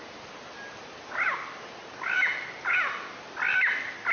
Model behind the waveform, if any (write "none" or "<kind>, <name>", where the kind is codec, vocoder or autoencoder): none